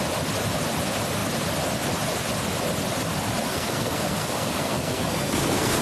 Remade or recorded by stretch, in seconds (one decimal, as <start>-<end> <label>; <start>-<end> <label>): 0.0-3.5 recorded; 3.5-5.8 remade